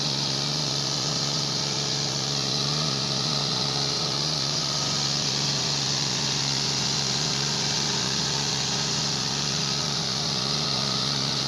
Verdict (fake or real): fake